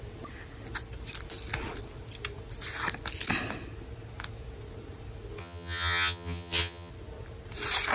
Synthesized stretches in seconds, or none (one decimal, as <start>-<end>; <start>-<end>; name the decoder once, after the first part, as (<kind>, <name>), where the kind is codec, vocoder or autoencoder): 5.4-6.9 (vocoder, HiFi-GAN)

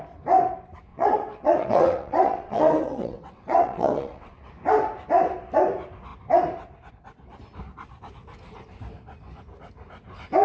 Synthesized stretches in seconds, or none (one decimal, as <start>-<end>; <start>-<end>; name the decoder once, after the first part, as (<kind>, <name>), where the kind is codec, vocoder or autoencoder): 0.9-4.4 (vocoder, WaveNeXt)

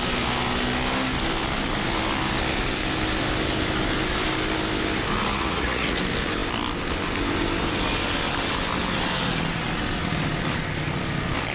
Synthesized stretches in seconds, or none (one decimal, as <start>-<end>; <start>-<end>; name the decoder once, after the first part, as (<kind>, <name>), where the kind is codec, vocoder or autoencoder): 5.3-6.0 (vocoder, Vocos)